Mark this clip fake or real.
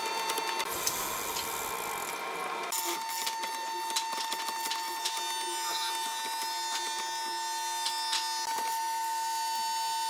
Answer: real